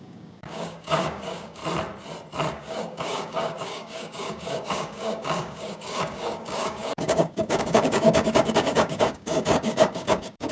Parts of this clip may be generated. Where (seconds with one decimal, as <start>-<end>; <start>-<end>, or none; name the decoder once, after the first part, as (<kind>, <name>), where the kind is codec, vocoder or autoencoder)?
0.0-1.6 (codec, DAC); 2.5-10.5